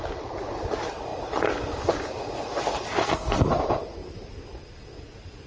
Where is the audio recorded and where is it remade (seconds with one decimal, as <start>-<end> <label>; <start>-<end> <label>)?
0.0-3.0 recorded; 3.0-3.5 remade; 3.5-5.5 recorded